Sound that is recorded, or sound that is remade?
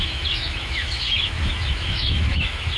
remade